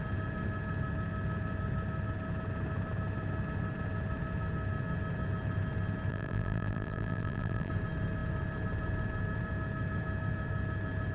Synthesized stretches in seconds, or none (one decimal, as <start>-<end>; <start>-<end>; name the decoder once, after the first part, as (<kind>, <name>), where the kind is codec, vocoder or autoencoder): 6.1-7.7 (vocoder, BigVGAN v2)